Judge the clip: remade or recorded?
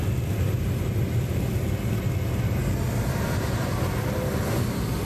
recorded